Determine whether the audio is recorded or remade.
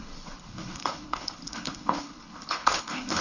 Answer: remade